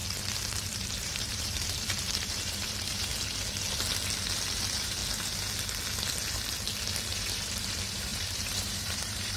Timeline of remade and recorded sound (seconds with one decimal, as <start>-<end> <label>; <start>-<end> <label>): 0.0-0.6 recorded; 0.6-3.1 remade; 3.1-4.5 recorded; 4.5-5.0 remade; 5.0-7.1 recorded; 7.1-9.4 remade